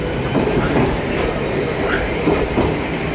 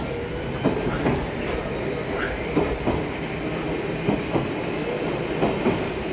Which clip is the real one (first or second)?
second